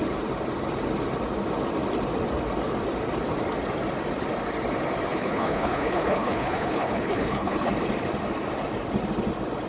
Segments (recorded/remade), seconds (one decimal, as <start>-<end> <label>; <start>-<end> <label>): 0.0-5.1 recorded; 5.1-7.7 remade; 7.7-9.7 recorded